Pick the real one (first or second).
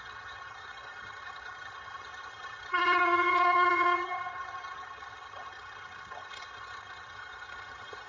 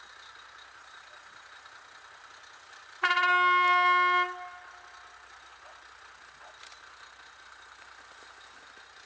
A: second